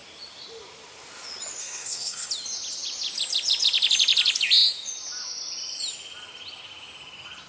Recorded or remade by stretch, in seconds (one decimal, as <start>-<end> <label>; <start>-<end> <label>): 0.0-1.6 recorded; 1.6-2.3 remade; 2.3-7.5 recorded